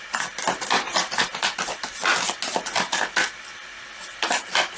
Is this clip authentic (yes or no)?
yes